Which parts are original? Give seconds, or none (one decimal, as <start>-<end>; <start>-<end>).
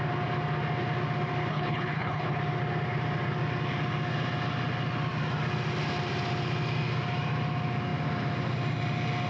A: 0.0-1.5; 2.4-9.3